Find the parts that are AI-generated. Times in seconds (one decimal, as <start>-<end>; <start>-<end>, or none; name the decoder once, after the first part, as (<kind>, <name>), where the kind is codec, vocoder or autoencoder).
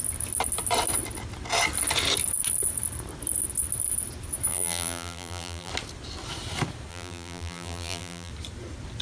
4.5-5.7 (vocoder, BigVGAN v2); 6.9-8.3